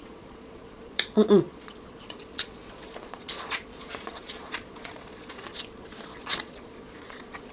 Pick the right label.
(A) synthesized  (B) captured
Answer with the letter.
A